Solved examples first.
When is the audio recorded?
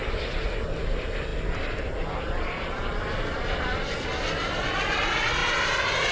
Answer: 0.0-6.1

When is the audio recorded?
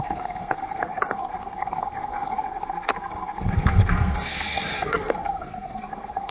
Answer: none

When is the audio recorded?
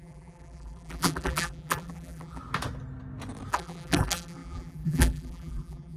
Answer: 2.4-3.5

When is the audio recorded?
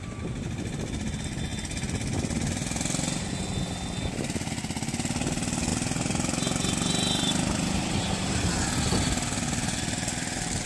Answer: 0.0-5.7; 8.5-10.7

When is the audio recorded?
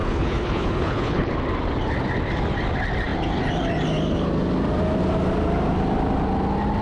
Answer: 1.3-6.8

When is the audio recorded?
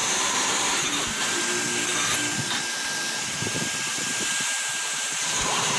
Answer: 1.2-3.9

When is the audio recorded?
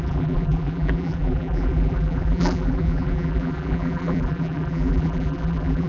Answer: none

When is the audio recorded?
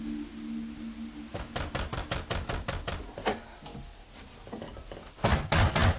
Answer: 0.0-6.0